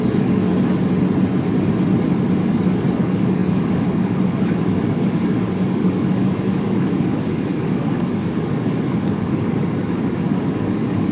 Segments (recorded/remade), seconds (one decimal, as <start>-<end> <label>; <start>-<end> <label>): 0.0-0.5 remade; 0.5-2.5 recorded; 2.5-11.1 remade